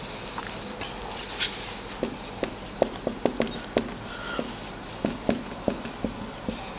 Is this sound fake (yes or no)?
no